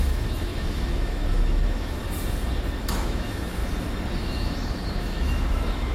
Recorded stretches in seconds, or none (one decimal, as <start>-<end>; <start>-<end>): 2.0-2.8; 3.6-4.2